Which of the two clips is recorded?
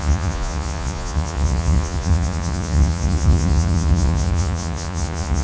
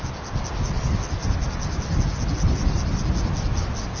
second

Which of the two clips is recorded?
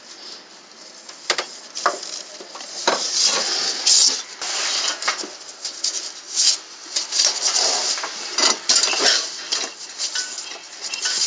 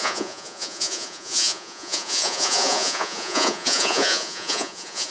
first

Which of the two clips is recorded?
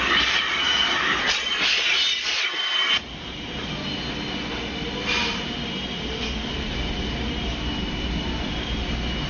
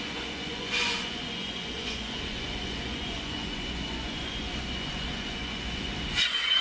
first